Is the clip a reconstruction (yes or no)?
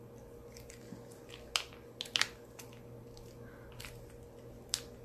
no